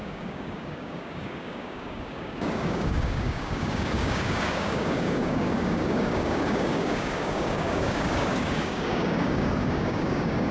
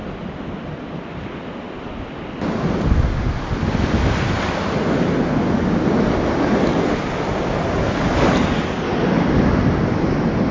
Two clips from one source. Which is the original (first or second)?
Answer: second